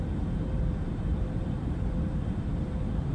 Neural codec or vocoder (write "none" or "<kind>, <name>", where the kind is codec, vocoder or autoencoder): vocoder, BigVGAN v2